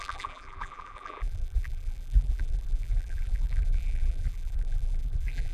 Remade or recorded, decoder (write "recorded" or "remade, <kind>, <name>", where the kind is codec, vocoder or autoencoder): remade, vocoder, BigVGAN v2